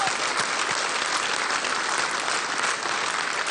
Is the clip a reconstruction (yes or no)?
no